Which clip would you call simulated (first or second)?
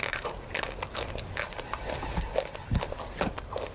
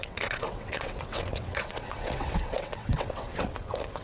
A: second